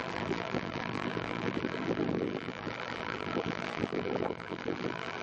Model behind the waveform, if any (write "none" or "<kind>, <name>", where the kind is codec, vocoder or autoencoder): vocoder, BigVGAN v2